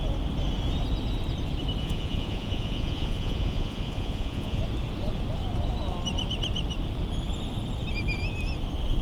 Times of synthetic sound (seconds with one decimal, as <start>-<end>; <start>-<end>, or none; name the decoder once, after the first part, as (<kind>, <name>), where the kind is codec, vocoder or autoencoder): 1.8-4.6 (vocoder, Vocos)